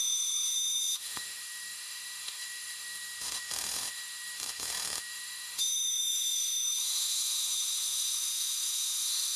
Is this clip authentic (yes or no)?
no